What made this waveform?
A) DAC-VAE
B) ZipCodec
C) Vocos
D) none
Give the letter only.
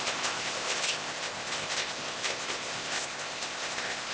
B